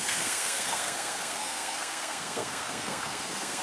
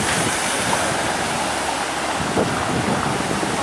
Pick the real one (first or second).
second